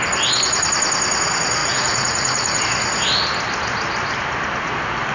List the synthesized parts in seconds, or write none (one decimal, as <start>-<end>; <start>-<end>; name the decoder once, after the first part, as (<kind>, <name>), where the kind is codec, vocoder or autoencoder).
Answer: 1.6-2.6 (vocoder, Vocos)